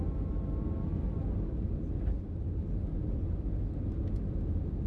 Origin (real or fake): real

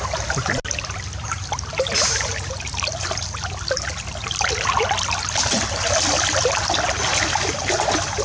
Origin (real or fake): real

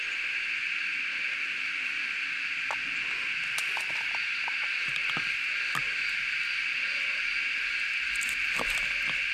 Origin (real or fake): real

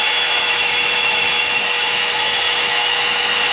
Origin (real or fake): fake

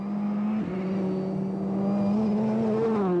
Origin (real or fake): real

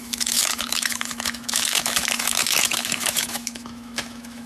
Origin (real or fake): fake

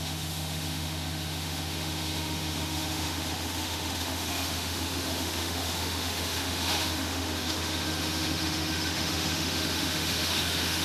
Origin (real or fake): fake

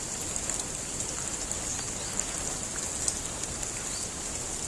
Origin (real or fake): real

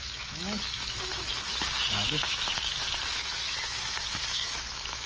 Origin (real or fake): fake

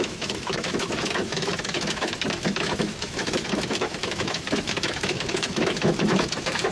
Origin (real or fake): fake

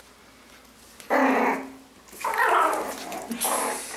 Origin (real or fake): real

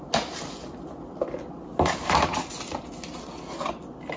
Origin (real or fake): real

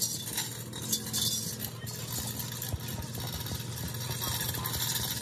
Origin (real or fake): real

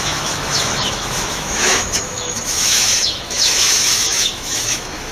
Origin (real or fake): fake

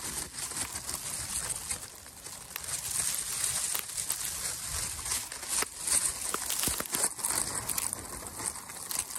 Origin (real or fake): real